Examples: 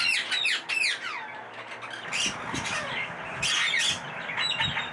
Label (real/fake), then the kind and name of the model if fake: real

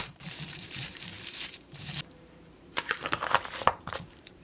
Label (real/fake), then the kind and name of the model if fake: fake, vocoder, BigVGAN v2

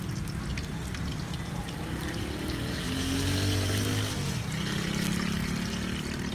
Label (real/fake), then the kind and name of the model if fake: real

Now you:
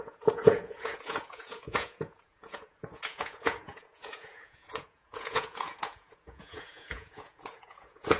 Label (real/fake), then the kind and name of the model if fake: fake, vocoder, Vocos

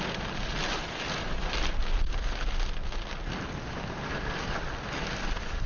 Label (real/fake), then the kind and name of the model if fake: real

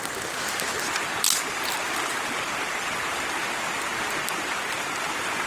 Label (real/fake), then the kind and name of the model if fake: real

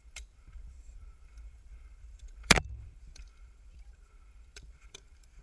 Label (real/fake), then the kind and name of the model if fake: fake, vocoder, BigVGAN v2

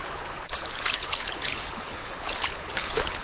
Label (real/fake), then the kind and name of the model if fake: fake, codec, HILCodec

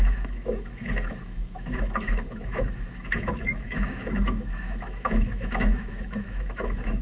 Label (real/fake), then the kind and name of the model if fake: fake, autoencoder, DAC-VAE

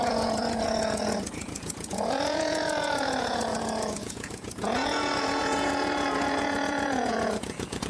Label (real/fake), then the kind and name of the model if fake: fake, vocoder, Vocos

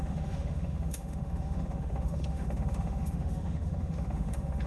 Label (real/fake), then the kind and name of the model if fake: fake, autoencoder, DAC-VAE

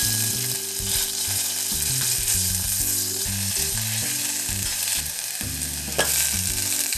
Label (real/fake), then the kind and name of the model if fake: real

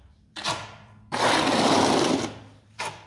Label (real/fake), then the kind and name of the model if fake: fake, vocoder, BigVGAN v2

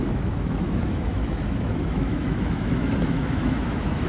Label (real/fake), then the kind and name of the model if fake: fake, autoencoder, DAC-VAE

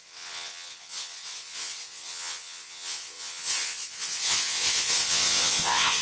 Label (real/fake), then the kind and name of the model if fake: fake, vocoder, WaveNeXt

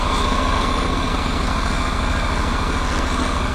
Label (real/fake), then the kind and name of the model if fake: fake, codec, SNAC